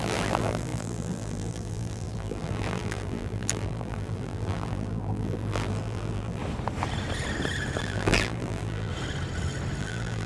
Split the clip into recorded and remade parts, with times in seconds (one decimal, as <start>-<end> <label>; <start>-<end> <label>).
0.0-6.4 remade; 6.4-7.8 recorded; 7.8-8.9 remade; 8.9-9.8 recorded; 9.8-10.3 remade